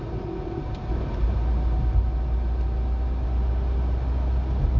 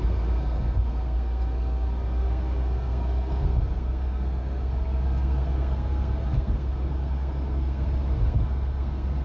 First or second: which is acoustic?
first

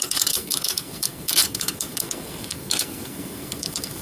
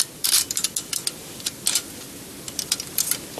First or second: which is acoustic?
second